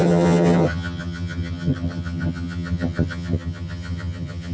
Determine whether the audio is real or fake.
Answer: fake